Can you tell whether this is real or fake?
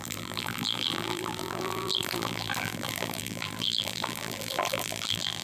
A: fake